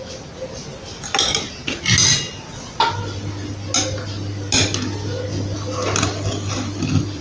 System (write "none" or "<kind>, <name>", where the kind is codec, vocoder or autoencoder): none